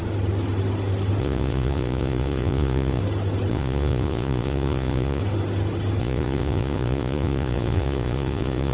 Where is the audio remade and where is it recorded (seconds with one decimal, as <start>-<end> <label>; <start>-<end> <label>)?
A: 0.0-1.2 recorded; 1.2-3.0 remade; 3.0-3.5 recorded; 3.5-5.2 remade; 5.2-6.0 recorded; 6.0-8.7 remade